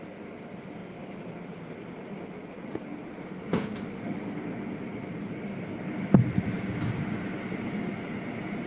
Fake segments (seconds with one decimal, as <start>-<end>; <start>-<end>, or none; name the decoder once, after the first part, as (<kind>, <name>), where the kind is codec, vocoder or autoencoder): 3.2-4.0 (autoencoder, DAC-VAE)